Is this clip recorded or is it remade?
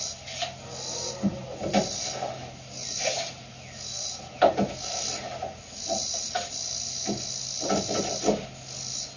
recorded